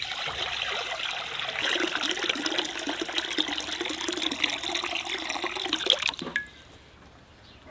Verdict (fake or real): real